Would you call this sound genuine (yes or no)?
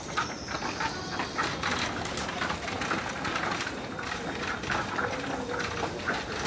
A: yes